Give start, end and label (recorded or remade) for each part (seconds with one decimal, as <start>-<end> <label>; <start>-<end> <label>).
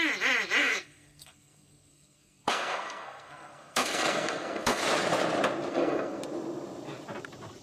0.0-0.6 recorded; 0.6-4.8 remade; 4.8-5.7 recorded; 5.7-6.2 remade; 6.2-7.6 recorded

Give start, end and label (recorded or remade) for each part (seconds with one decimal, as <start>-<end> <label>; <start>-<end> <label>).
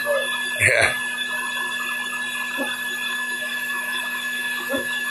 0.0-3.1 recorded; 3.1-5.1 remade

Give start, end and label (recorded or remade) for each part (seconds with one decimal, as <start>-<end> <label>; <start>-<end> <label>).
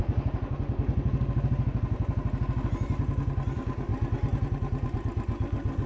0.0-3.5 recorded; 3.5-3.9 remade; 3.9-5.9 recorded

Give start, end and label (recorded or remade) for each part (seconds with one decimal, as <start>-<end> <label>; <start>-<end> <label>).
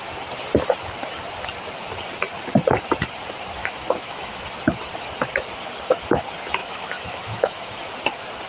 0.0-3.6 recorded; 3.6-4.4 remade; 4.4-6.6 recorded; 6.6-7.7 remade; 7.7-8.5 recorded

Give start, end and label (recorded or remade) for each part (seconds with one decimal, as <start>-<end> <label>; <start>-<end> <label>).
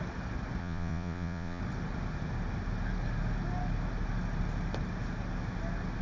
0.0-0.6 recorded; 0.6-1.6 remade; 1.6-6.0 recorded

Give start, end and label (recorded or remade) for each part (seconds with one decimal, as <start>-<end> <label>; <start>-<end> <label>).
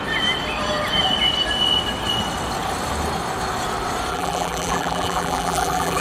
0.0-4.1 recorded; 4.1-6.0 remade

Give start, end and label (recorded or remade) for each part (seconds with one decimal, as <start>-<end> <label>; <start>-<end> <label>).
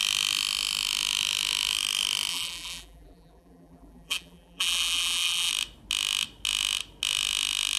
0.0-2.3 recorded; 2.3-5.5 remade; 5.5-7.8 recorded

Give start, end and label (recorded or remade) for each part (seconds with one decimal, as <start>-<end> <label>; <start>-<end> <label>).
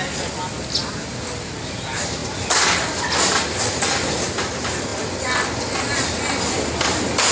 0.0-7.3 recorded